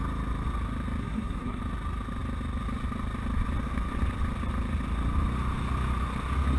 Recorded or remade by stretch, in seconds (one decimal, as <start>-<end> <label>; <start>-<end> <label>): 0.0-1.0 recorded; 1.0-1.6 remade; 1.6-6.6 recorded